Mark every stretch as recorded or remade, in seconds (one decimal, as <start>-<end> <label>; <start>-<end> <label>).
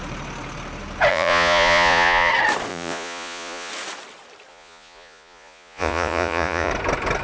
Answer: 0.0-1.1 recorded; 1.1-2.3 remade; 2.3-2.7 recorded; 2.7-3.7 remade; 3.7-4.5 recorded; 4.5-6.7 remade; 6.7-7.2 recorded